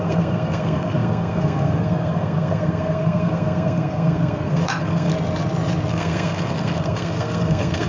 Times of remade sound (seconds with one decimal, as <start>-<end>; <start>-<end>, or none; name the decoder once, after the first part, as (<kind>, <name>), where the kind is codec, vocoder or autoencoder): 0.0-5.1 (codec, SNAC); 5.9-7.9